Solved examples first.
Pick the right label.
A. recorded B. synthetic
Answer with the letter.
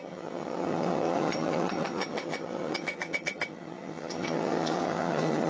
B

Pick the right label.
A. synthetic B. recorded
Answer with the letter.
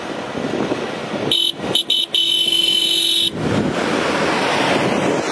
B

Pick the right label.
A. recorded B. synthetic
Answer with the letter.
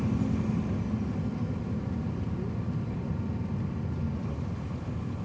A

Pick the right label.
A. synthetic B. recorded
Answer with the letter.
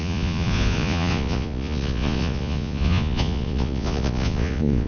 A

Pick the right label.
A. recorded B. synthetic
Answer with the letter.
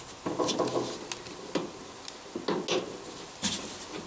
A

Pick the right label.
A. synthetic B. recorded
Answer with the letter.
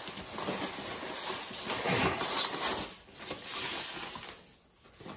B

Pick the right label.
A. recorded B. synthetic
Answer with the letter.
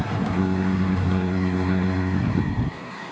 B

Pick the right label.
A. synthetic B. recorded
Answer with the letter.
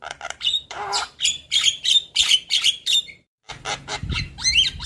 A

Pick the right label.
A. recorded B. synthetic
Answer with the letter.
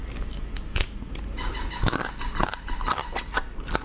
A